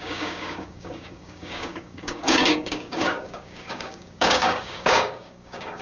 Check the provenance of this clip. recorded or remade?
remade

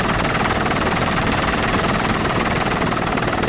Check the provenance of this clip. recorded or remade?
recorded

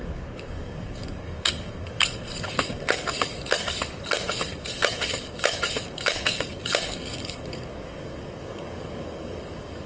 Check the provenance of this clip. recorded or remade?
remade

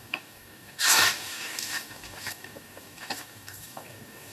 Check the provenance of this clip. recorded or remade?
remade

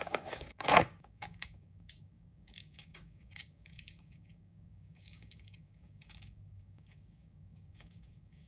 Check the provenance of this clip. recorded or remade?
remade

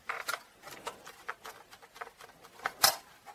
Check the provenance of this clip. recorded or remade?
recorded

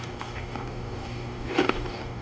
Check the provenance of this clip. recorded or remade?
remade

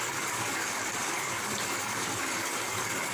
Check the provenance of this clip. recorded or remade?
remade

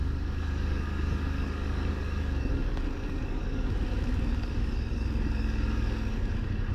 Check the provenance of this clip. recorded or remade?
remade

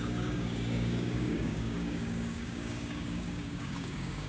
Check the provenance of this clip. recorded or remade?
remade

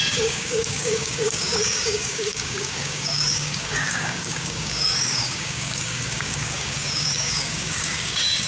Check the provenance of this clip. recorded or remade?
remade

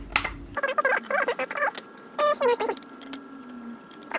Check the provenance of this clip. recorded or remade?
recorded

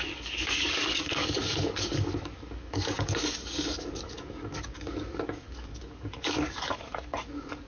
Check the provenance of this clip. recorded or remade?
remade